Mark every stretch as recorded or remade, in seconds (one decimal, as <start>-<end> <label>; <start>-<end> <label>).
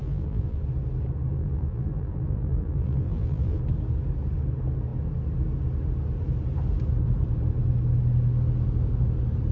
0.0-0.6 remade; 0.6-1.3 recorded; 1.3-3.6 remade; 3.6-9.5 recorded